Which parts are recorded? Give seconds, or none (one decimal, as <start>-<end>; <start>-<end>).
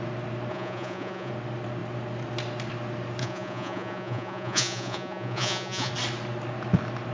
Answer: 0.0-0.5; 1.3-3.2; 5.9-7.1